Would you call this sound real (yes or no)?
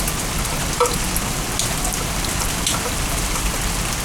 no